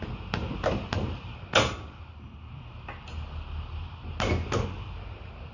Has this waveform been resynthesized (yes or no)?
no